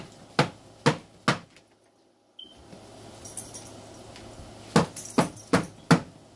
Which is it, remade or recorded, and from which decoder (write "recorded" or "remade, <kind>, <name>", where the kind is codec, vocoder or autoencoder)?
recorded